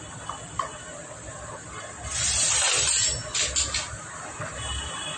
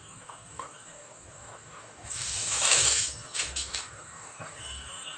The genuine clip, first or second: first